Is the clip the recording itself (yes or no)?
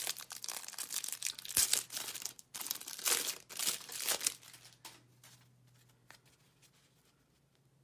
yes